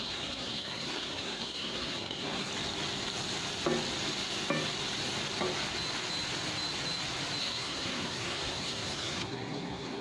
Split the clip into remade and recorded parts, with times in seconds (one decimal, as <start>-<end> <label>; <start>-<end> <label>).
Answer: 0.0-2.5 remade; 2.5-7.4 recorded; 7.4-10.0 remade